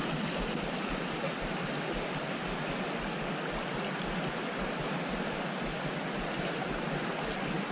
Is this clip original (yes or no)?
yes